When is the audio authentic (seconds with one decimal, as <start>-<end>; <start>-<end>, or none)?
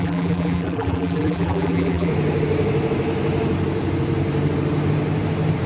2.1-5.7